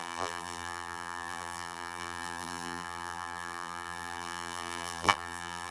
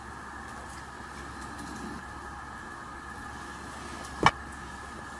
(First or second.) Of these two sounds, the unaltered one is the second